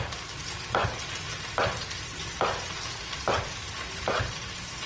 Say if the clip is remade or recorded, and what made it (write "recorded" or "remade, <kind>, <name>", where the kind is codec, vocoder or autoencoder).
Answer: recorded